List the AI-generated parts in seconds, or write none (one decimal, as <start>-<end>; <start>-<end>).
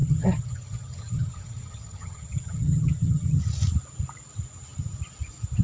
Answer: 0.0-3.4